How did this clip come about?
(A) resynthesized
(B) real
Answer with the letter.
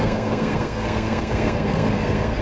A